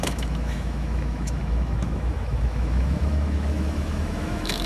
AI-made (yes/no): yes